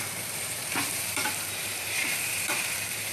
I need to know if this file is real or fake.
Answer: fake